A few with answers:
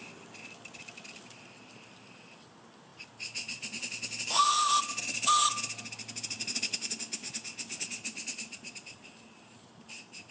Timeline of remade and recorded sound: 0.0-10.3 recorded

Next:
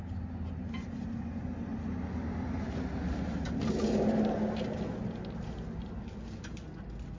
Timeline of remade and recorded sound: 0.0-7.2 recorded

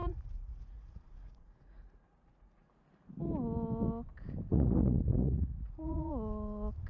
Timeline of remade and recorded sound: 0.0-2.7 remade; 2.7-4.5 recorded; 4.5-6.1 remade; 6.1-6.9 recorded

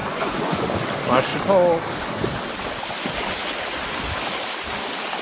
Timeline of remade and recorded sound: 0.0-0.7 remade; 0.7-5.2 recorded

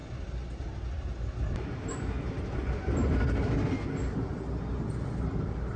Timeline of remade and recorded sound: 0.0-5.8 recorded